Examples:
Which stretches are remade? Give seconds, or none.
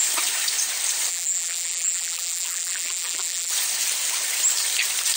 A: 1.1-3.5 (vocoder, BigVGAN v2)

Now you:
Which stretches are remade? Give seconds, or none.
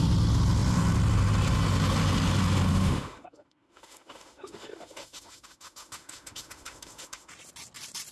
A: 2.7-7.3 (autoencoder, DAC-VAE)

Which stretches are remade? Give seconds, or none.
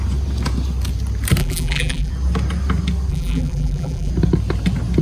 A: 1.4-2.1 (vocoder, BigVGAN v2); 3.1-4.1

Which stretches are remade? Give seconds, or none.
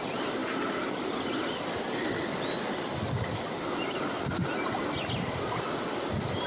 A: none